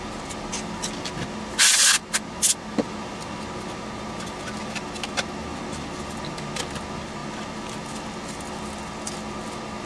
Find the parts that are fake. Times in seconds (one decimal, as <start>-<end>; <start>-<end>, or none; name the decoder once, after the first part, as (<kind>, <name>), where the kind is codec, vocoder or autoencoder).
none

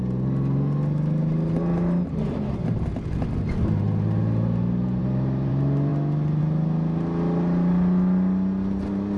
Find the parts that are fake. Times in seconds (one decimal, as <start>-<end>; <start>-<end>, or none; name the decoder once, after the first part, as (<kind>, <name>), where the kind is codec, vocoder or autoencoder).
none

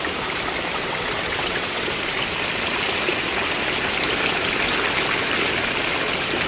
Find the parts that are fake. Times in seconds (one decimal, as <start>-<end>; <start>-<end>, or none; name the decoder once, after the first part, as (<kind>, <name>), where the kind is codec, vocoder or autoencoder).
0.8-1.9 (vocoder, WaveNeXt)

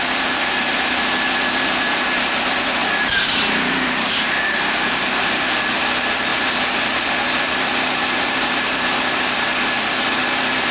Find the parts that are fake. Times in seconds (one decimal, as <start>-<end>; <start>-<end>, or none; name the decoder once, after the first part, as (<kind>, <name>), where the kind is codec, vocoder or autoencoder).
0.0-2.8 (vocoder, BigVGAN v2); 3.7-10.7

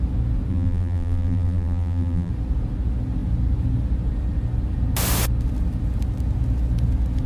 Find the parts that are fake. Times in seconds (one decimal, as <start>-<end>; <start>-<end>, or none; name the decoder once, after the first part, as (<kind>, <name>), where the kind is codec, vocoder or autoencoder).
0.5-2.3 (vocoder, BigVGAN v2)

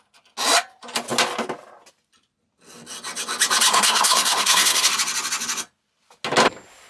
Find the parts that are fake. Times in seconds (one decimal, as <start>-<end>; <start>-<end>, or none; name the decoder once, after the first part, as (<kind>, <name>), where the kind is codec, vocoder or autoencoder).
3.7-4.9 (codec, SNAC)

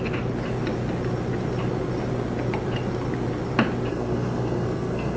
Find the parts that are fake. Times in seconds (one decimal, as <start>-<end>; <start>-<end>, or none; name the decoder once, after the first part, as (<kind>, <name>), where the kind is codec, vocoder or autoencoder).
3.9-5.2 (codec, SNAC)